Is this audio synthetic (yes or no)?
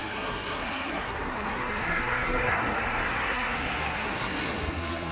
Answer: yes